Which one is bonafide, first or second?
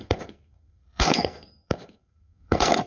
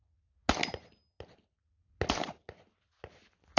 second